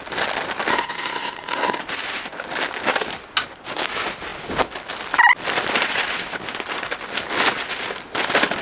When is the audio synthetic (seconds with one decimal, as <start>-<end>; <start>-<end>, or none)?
0.7-1.8